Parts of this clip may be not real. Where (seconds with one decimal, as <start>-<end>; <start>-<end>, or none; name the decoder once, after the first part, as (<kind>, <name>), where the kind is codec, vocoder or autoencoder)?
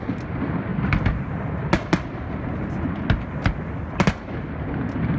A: none